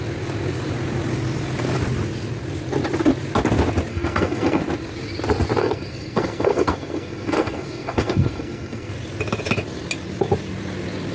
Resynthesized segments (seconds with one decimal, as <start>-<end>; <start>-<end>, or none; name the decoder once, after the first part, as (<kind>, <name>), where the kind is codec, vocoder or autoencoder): 3.9-4.6 (codec, SNAC); 5.6-8.9